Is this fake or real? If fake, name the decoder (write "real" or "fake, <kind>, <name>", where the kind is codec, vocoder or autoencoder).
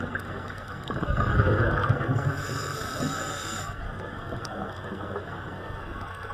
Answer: fake, codec, SNAC